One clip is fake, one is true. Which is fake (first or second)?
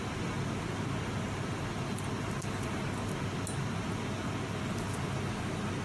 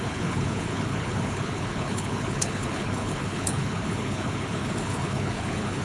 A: second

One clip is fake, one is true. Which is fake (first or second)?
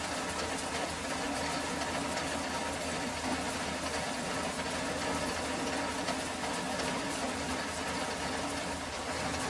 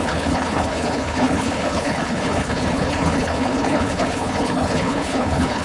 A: second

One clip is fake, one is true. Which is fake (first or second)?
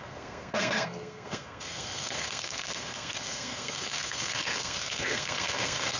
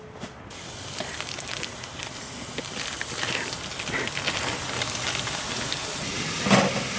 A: first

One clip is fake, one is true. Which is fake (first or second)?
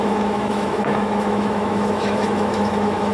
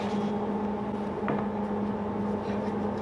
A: first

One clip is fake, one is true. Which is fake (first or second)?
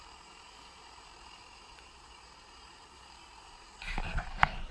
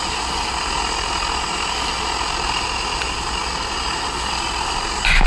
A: first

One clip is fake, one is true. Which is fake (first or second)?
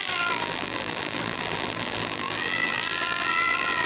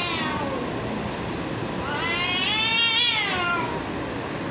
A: first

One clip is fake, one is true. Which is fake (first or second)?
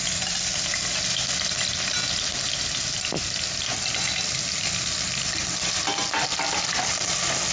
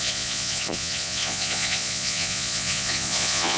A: second